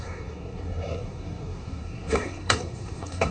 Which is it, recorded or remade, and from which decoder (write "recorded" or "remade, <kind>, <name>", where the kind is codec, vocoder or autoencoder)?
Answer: remade, codec, SNAC